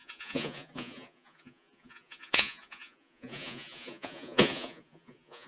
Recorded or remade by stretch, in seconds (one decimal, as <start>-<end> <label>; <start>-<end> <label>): 0.0-5.5 remade